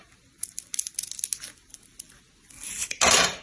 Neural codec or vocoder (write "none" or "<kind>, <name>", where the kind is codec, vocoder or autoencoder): none